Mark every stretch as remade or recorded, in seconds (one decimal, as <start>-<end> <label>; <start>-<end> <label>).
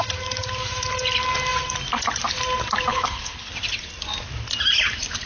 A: 0.0-2.9 recorded; 2.9-3.5 remade; 3.5-5.3 recorded